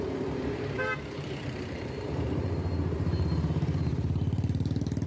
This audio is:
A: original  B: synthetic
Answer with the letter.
B